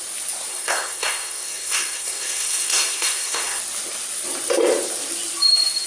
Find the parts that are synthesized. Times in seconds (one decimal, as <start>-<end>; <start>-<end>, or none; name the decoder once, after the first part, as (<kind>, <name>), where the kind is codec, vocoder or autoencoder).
0.5-3.6 (codec, SNAC)